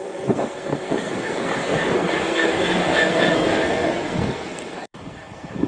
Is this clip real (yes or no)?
no